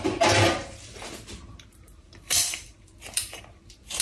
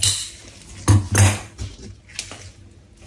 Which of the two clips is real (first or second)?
second